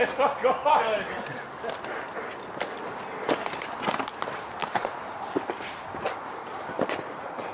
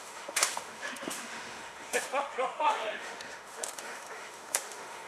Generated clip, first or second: second